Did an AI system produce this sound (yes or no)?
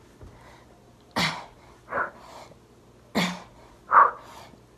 no